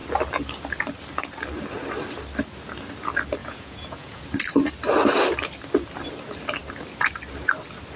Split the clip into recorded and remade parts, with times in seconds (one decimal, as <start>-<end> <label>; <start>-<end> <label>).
0.0-3.4 recorded; 3.4-4.2 remade; 4.2-8.0 recorded